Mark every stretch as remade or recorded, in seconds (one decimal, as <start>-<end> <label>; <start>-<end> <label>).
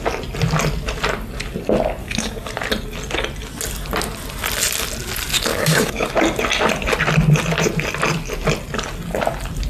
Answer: 0.0-2.0 recorded; 2.0-2.5 remade; 2.5-5.5 recorded; 5.5-6.1 remade; 6.1-9.7 recorded